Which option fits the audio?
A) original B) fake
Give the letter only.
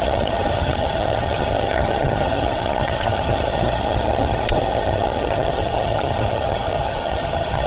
B